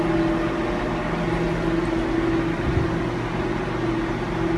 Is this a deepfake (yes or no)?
no